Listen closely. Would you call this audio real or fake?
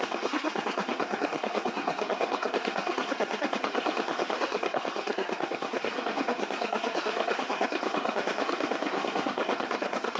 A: fake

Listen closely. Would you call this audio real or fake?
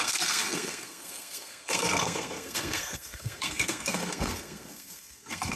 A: fake